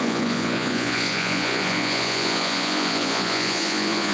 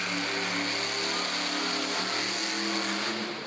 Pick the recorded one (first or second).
second